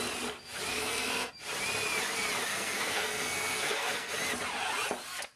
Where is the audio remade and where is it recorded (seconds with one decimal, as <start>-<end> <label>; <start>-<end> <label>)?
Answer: 0.0-0.7 recorded; 0.7-1.3 remade; 1.3-2.5 recorded; 2.5-4.1 remade; 4.1-5.4 recorded